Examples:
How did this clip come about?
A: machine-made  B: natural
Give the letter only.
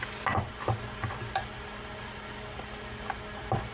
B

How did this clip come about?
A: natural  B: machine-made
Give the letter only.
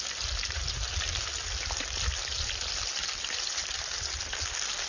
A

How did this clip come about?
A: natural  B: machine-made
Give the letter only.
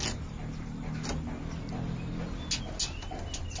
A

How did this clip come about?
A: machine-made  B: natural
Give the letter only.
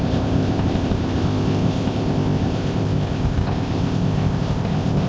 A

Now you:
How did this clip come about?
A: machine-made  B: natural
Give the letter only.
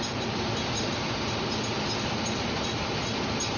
B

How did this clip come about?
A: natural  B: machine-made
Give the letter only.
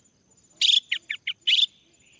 A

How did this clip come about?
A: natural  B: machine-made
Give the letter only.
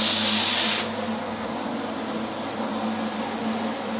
A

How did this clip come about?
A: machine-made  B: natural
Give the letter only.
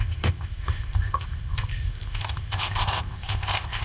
A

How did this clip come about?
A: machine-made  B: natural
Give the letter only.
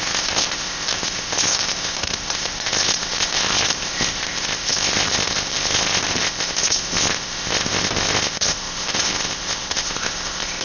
A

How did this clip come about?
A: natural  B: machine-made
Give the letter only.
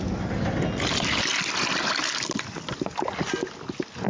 A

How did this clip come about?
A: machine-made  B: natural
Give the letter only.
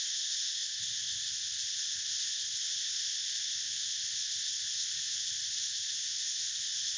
A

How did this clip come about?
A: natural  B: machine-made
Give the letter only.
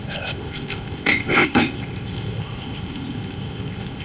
B